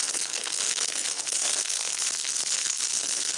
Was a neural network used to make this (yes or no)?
yes